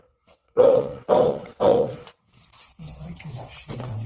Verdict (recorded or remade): remade